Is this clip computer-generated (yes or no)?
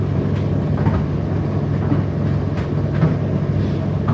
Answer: no